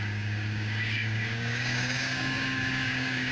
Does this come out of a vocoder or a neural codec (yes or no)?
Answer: yes